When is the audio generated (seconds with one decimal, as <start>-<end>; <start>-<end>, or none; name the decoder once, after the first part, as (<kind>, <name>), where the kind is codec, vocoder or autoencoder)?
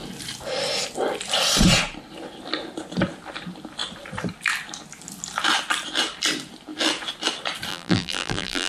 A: 7.7-8.7 (vocoder, BigVGAN v2)